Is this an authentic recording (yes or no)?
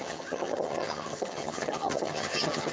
no